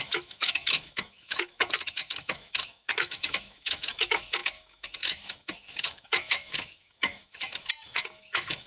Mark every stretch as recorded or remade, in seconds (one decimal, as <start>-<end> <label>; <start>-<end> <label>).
0.0-8.7 remade

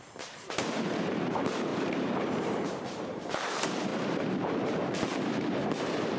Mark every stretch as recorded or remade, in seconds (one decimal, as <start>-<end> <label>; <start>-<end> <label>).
0.0-6.2 remade